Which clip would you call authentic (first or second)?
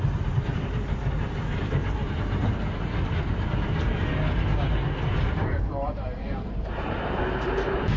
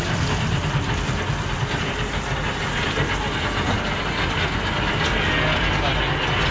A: second